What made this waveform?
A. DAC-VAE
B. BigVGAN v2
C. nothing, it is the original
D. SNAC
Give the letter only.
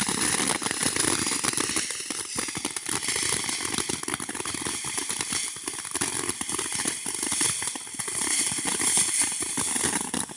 C